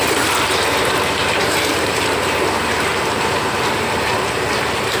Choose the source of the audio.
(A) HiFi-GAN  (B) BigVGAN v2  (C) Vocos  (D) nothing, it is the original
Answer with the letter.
B